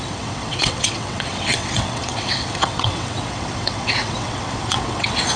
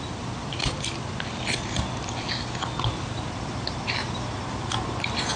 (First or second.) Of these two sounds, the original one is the second